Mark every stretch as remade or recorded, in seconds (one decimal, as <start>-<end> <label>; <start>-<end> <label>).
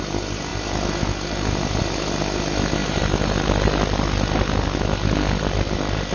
0.0-6.1 recorded